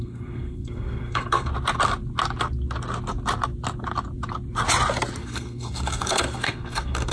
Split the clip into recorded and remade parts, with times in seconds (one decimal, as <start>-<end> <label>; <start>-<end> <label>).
0.0-1.5 remade; 1.5-5.2 recorded; 5.2-7.1 remade